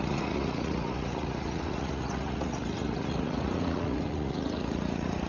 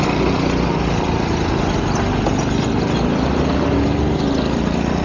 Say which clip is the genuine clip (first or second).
second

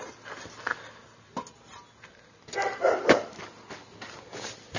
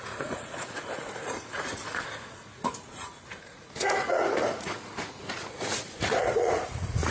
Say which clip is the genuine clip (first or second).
first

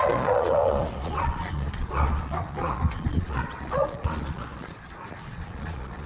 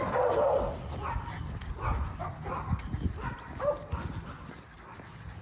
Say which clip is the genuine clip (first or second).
second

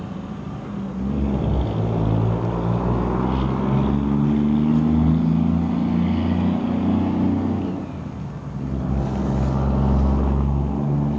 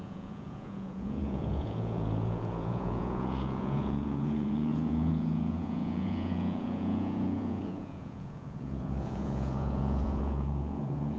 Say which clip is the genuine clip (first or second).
first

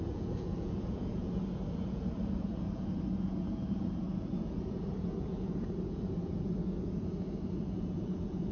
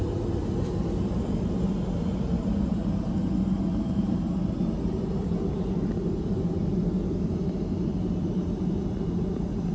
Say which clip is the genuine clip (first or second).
second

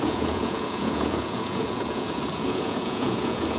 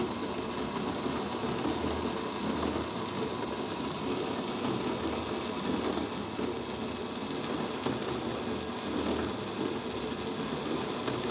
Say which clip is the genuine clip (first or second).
second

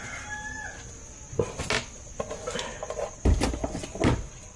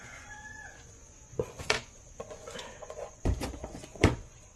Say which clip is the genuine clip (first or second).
first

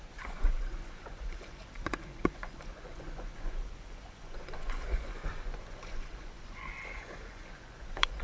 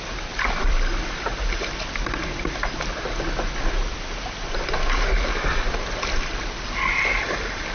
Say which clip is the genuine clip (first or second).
second